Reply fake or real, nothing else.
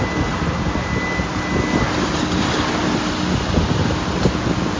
real